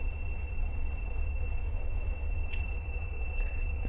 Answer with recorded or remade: remade